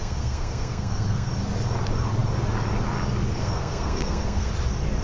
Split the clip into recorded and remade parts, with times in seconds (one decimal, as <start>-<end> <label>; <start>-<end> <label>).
0.0-1.3 remade; 1.3-3.4 recorded; 3.4-4.5 remade; 4.5-5.0 recorded